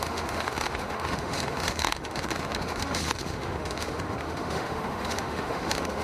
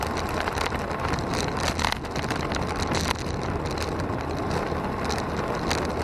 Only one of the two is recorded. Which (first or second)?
second